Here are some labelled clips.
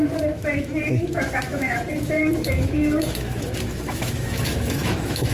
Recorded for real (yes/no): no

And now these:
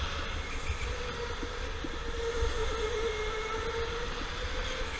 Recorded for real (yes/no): yes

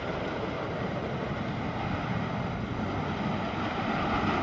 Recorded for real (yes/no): yes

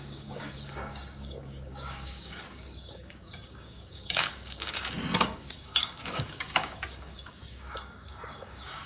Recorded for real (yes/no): no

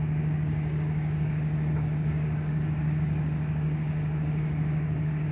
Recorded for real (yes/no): no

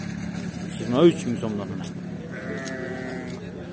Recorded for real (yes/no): yes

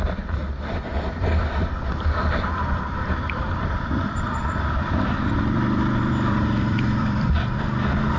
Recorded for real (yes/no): no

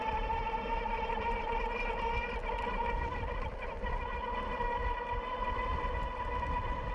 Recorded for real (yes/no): yes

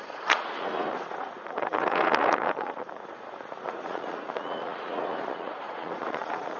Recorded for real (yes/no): no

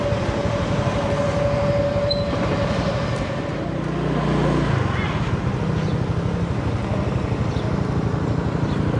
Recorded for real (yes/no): yes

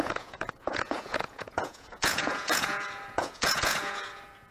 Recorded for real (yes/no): no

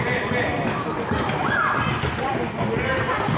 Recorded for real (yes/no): yes